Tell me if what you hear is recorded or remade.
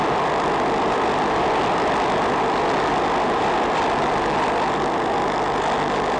recorded